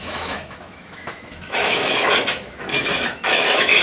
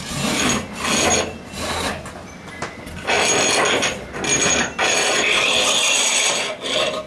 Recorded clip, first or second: second